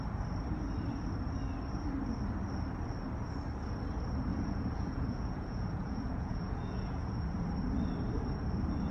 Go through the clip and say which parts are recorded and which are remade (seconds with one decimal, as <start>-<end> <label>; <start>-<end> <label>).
0.0-4.3 recorded; 4.3-7.0 remade; 7.0-8.9 recorded